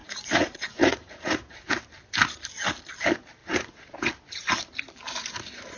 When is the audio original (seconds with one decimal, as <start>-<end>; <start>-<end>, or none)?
1.7-3.4; 4.1-5.8